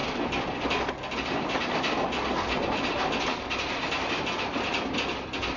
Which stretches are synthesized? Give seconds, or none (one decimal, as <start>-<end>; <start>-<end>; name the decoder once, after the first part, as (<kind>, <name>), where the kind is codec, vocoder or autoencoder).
none